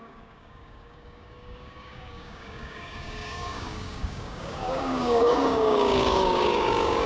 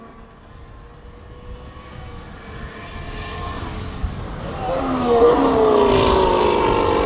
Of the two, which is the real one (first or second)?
second